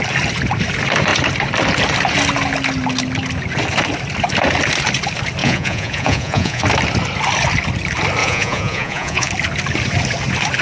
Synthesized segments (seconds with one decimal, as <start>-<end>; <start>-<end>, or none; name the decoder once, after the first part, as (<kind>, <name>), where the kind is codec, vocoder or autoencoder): 5.4-6.6 (vocoder, Vocos); 8.2-9.3